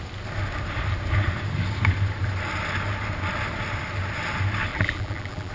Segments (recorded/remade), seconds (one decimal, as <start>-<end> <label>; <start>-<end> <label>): 0.0-4.7 recorded; 4.7-5.5 remade